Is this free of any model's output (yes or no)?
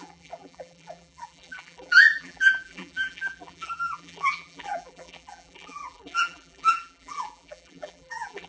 no